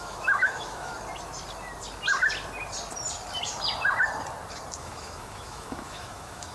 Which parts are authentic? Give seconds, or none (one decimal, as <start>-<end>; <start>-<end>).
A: 0.9-4.8